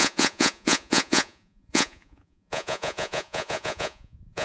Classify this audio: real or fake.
fake